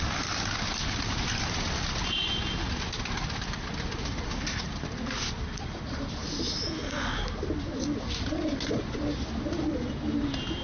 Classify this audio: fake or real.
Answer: real